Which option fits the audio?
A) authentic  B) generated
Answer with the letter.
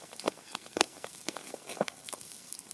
B